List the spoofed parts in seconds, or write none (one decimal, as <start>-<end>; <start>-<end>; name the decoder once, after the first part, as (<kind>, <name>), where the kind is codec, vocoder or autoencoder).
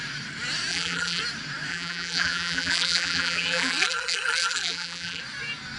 0.7-1.2 (vocoder, BigVGAN v2); 1.7-5.2